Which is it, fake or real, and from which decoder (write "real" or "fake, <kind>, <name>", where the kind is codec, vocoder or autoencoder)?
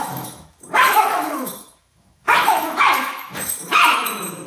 fake, autoencoder, DAC-VAE